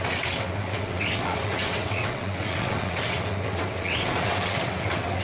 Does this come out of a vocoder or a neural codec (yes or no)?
yes